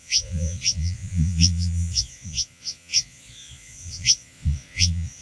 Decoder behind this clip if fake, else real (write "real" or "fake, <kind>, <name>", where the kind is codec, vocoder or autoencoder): fake, vocoder, Vocos